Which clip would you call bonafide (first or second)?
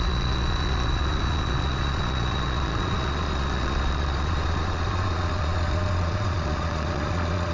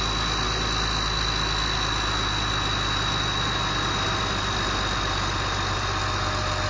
second